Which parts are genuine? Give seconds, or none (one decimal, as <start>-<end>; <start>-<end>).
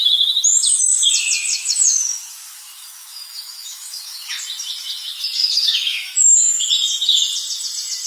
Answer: 0.0-1.5; 4.4-5.4; 6.7-8.1